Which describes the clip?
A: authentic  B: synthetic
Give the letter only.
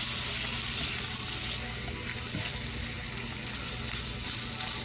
A